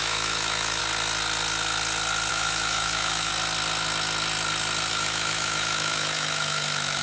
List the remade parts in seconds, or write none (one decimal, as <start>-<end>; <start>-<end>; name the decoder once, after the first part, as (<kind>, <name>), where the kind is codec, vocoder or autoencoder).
0.0-0.8 (autoencoder, DAC-VAE); 2.3-3.3; 4.9-7.0